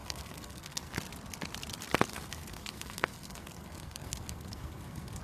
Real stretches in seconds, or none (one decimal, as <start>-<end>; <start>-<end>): 0.9-2.1